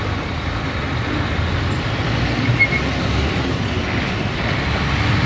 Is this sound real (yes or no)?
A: yes